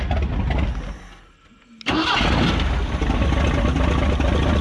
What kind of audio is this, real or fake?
real